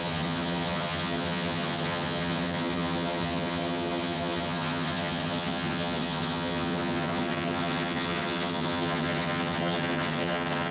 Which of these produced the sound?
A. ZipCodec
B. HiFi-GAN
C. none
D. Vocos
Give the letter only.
B